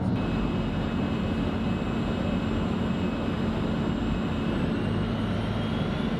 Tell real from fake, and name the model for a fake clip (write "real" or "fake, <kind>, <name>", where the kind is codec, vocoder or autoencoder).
real